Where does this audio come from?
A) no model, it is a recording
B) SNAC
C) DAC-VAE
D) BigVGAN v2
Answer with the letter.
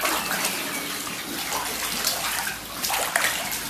A